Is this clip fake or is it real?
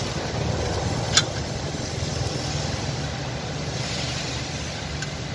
real